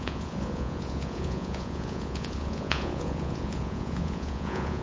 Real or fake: fake